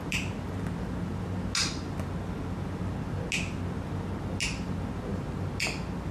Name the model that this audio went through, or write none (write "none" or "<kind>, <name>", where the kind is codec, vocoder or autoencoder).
none